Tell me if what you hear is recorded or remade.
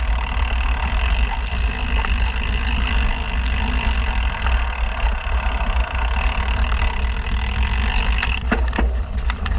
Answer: recorded